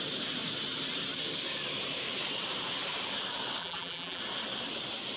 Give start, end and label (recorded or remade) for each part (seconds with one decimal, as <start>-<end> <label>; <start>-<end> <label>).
0.0-3.6 recorded; 3.6-4.2 remade; 4.2-5.2 recorded